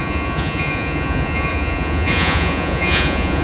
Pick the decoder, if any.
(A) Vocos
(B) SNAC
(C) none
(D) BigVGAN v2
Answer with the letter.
A